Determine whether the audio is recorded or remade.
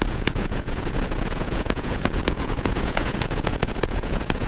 remade